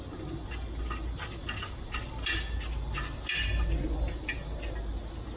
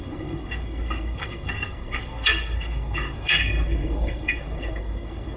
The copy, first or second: second